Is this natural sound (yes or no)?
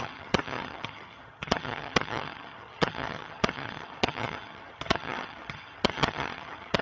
no